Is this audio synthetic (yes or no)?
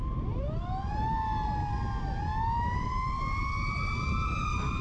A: no